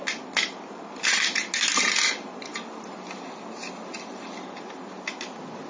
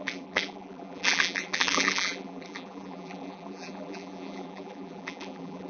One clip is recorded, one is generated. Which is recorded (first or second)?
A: first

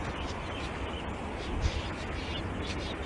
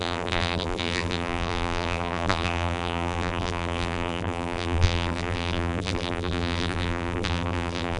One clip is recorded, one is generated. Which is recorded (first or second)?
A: first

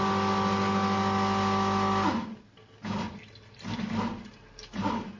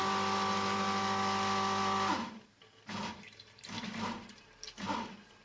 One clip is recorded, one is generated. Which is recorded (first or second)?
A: first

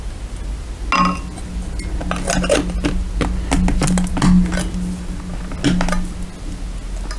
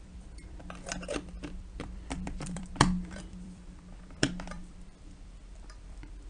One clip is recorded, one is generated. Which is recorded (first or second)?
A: first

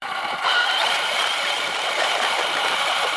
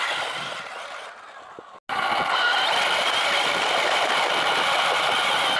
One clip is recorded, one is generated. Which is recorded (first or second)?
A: second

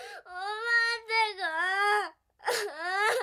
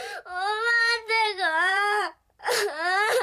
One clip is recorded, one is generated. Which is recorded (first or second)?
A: first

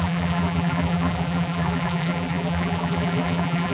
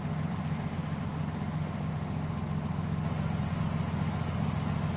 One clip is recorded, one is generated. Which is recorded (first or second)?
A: second